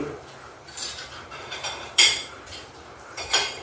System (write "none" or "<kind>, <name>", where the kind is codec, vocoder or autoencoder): vocoder, BigVGAN v2